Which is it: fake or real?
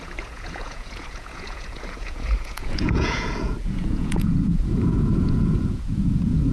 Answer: fake